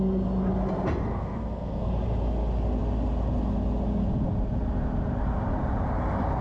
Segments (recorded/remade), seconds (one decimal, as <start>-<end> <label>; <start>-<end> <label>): 0.0-1.1 recorded; 1.1-1.9 remade; 1.9-6.4 recorded